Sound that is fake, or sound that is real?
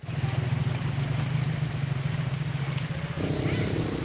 real